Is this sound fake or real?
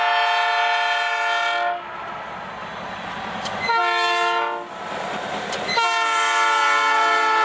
real